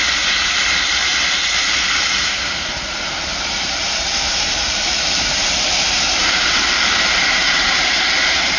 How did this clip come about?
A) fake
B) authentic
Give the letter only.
A